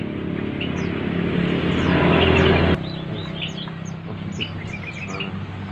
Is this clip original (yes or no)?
yes